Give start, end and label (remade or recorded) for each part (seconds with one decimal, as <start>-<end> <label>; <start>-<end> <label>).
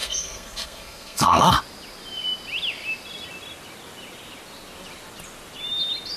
0.0-1.5 remade; 1.5-6.2 recorded